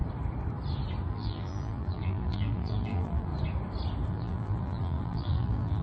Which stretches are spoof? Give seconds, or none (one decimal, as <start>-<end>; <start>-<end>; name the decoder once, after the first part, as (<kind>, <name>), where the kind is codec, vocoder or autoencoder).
1.1-3.3 (vocoder, BigVGAN v2); 4.1-5.8